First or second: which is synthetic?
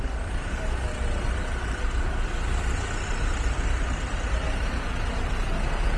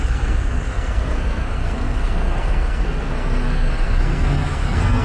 second